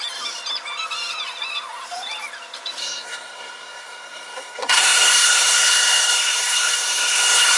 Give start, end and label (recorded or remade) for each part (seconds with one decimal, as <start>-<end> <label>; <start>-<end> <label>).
0.0-2.8 recorded; 2.8-7.6 remade